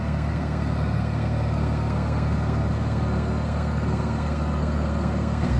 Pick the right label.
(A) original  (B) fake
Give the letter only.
B